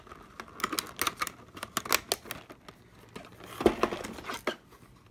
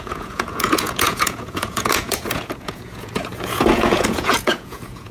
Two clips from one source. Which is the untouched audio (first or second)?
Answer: first